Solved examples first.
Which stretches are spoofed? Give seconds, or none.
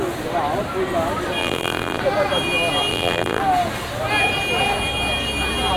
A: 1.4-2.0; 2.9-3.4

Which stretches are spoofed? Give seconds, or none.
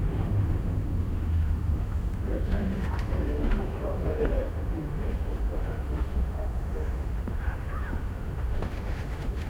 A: 0.0-9.5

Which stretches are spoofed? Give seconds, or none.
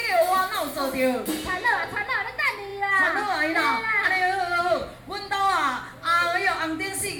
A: none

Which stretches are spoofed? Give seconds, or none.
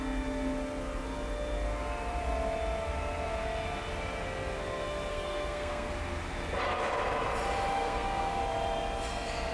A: 5.1-5.9; 7.7-8.4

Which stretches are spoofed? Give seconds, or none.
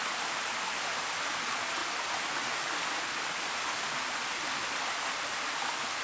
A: none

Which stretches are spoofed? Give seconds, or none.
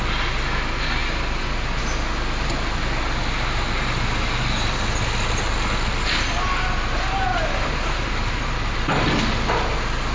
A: 7.3-8.8